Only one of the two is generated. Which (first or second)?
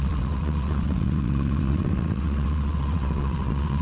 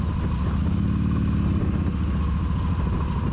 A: first